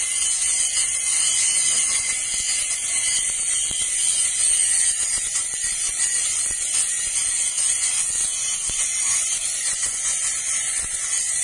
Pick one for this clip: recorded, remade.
remade